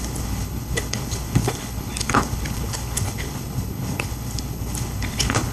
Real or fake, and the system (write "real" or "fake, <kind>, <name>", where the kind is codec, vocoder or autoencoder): fake, codec, HILCodec